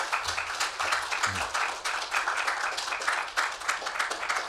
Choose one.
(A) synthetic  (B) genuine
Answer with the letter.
B